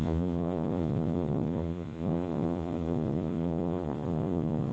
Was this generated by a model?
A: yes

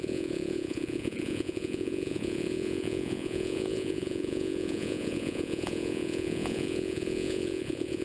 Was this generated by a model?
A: yes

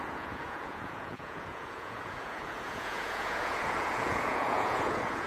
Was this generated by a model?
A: yes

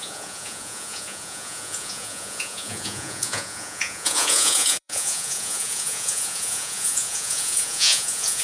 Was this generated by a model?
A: yes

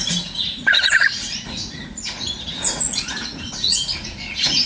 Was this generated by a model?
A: yes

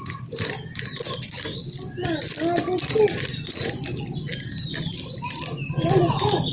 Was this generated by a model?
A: no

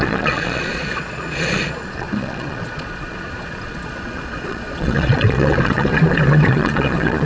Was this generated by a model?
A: yes